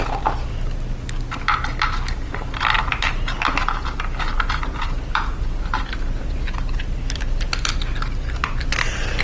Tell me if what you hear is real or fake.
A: real